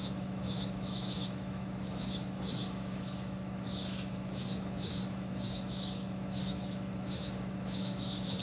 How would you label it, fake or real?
fake